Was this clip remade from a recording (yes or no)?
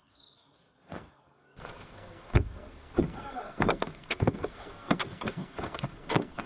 yes